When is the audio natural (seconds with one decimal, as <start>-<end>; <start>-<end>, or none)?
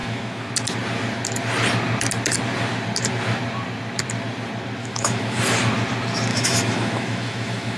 0.5-4.8; 5.4-6.3